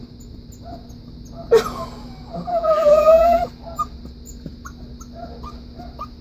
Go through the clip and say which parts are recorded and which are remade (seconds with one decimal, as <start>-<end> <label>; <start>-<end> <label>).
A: 0.0-2.5 recorded; 2.5-3.4 remade; 3.4-6.2 recorded